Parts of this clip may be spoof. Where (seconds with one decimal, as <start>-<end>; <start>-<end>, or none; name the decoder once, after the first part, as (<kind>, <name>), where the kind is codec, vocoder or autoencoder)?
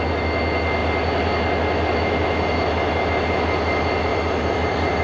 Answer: 4.1-5.0 (vocoder, BigVGAN v2)